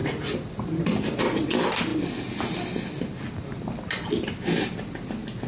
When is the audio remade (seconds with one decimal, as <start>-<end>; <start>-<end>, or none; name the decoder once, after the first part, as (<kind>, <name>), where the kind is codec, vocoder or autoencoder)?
0.0-1.2 (vocoder, BigVGAN v2)